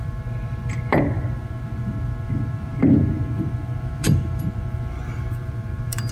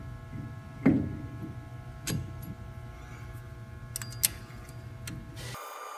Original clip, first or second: second